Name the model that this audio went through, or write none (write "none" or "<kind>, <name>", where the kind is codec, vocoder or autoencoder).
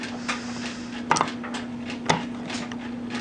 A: none